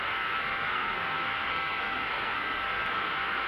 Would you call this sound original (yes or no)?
no